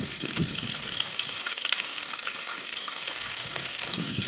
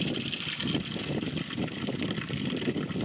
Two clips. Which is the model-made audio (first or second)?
first